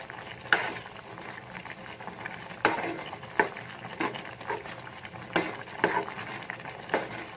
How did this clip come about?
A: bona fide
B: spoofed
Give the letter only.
A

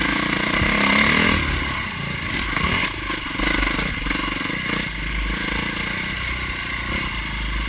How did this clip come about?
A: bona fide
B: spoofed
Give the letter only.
A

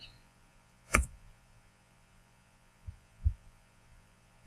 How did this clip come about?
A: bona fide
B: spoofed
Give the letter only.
B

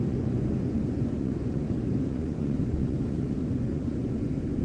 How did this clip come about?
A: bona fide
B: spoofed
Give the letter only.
B